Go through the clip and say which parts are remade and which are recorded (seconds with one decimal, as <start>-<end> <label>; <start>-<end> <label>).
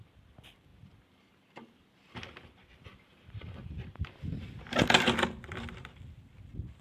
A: 0.0-6.8 recorded